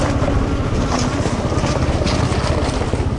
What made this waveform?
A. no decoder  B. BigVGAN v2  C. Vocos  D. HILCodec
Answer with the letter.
A